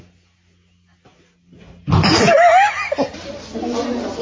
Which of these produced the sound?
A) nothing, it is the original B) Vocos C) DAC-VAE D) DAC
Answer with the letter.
A